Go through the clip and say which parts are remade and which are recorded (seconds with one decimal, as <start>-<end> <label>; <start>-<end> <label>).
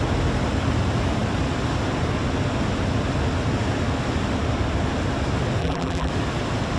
0.0-5.6 recorded; 5.6-6.1 remade; 6.1-6.8 recorded